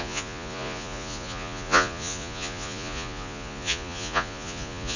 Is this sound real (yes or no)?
no